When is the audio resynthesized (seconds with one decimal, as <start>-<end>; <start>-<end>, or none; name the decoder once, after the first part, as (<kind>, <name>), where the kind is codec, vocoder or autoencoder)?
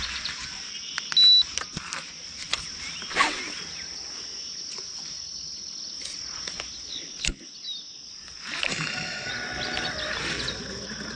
8.7-9.3 (codec, SNAC)